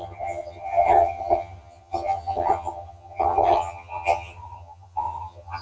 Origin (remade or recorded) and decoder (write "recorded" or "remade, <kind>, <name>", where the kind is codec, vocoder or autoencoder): remade, vocoder, HiFi-GAN